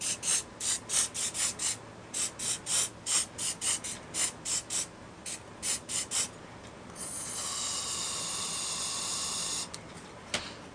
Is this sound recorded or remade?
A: recorded